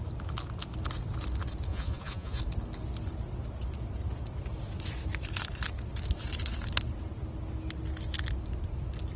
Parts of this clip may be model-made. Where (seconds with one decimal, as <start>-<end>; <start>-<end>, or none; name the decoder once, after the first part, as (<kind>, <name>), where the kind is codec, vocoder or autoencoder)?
1.7-2.4 (vocoder, Vocos)